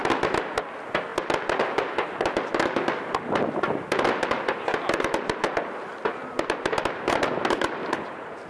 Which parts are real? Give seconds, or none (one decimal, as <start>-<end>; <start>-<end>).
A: 0.0-8.5